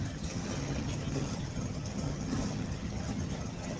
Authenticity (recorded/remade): remade